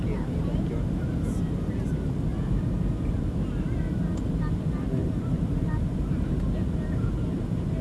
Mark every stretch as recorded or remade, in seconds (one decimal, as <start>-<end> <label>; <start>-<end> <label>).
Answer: 0.0-2.3 recorded; 2.3-3.2 remade; 3.2-5.0 recorded; 5.0-6.3 remade; 6.3-7.8 recorded